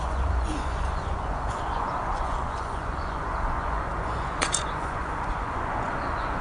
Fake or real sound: fake